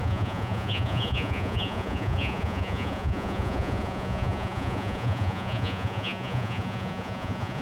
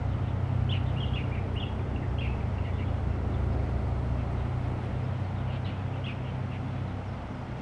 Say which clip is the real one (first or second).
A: second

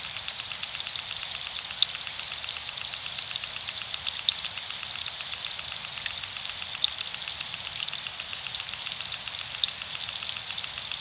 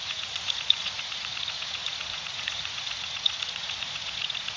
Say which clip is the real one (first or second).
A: first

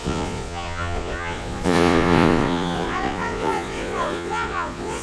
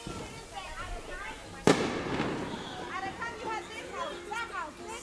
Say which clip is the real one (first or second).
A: second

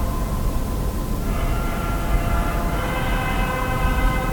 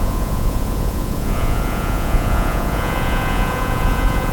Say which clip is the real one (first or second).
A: first